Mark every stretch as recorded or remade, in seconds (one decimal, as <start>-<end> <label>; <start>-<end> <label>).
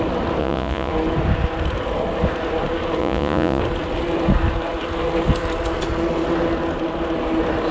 0.0-0.4 recorded; 0.4-0.9 remade; 0.9-3.0 recorded; 3.0-3.6 remade; 3.6-7.7 recorded